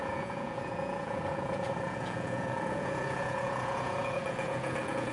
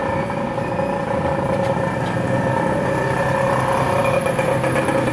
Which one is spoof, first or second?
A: first